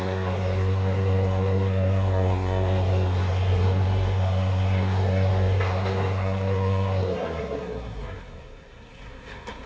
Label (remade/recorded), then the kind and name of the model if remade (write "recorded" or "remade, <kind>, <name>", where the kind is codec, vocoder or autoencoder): remade, codec, SNAC